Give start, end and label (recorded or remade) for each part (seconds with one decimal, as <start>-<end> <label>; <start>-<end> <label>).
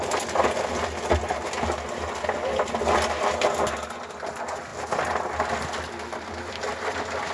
0.0-7.3 recorded